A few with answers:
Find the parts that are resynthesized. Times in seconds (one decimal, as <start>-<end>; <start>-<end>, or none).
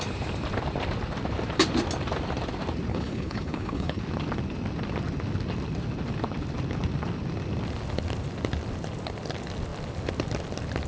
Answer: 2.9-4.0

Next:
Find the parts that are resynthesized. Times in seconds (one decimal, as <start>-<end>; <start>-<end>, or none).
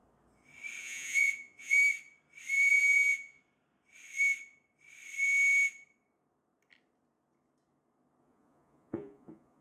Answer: 0.8-1.8; 2.7-3.4; 8.2-9.6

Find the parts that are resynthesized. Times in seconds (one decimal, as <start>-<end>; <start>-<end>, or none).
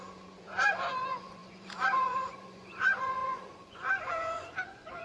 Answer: 0.0-5.0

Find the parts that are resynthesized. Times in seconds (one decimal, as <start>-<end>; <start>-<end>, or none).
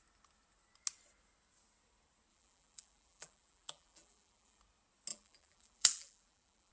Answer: 2.3-4.6; 5.1-6.7